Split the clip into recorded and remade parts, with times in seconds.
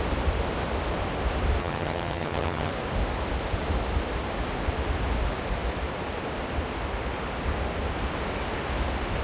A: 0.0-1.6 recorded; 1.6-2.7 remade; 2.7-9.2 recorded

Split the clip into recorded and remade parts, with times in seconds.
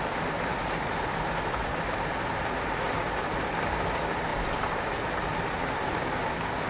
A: 0.0-6.7 recorded